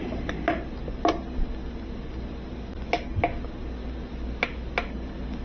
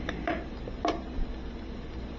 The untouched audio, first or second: first